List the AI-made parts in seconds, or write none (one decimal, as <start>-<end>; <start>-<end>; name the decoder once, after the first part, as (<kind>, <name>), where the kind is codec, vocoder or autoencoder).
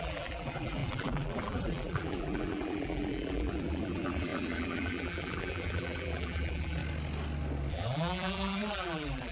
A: 0.0-6.8 (vocoder, BigVGAN v2); 7.7-9.3